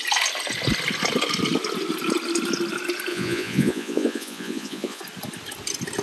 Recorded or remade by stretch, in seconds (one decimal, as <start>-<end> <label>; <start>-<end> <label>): 0.0-3.1 recorded; 3.1-5.0 remade; 5.0-6.0 recorded